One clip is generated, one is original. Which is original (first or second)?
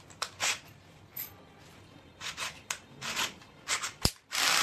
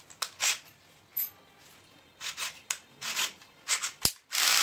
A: second